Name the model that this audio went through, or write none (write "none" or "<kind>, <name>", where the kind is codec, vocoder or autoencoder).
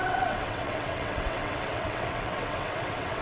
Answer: vocoder, WaveNeXt